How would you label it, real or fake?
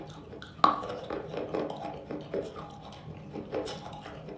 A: real